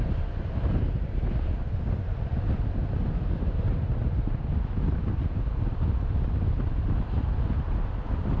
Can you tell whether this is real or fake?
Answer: real